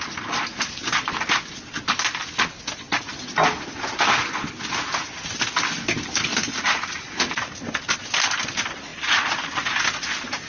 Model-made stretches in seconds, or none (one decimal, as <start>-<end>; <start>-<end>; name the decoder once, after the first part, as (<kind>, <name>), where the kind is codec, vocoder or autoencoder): 6.3-7.3 (vocoder, Vocos)